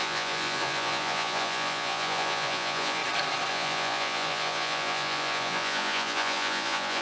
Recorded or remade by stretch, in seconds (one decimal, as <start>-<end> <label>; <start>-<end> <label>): 0.0-3.0 remade; 3.0-3.5 recorded; 3.5-7.0 remade